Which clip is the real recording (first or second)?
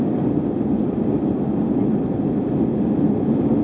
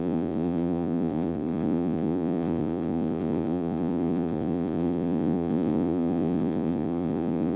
first